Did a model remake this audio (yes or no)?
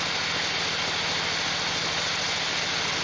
no